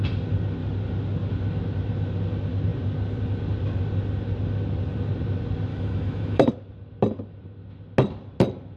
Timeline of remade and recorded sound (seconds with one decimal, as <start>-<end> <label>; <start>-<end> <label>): 0.0-5.7 recorded; 5.7-6.5 remade; 6.5-8.8 recorded